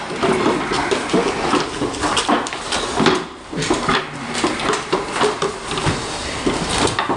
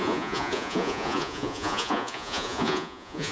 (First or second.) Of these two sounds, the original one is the first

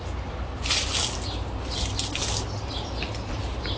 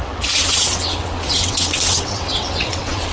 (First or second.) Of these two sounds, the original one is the first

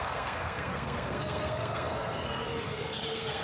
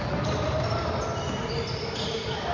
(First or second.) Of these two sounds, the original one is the second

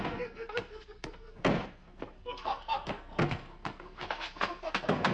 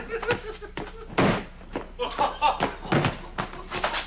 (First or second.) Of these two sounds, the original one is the second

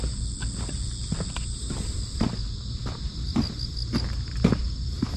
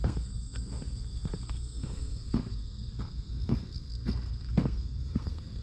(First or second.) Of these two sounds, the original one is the first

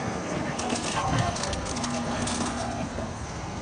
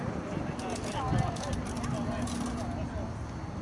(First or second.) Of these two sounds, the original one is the second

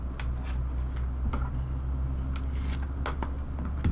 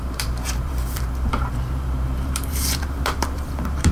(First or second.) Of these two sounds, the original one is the first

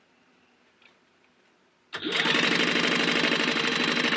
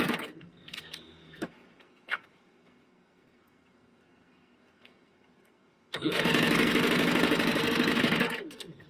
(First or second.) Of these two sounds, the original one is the first